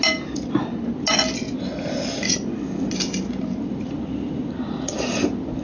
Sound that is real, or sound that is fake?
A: real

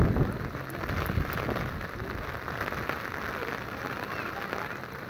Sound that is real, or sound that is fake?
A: real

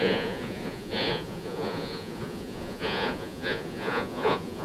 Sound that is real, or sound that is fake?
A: fake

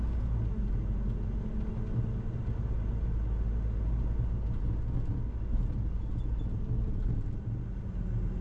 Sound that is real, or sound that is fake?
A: real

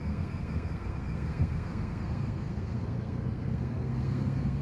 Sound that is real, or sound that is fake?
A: fake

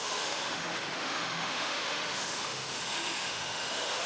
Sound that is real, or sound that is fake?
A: fake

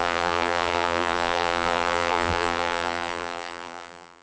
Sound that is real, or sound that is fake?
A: fake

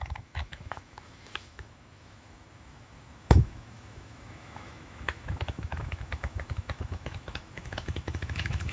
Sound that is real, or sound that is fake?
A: fake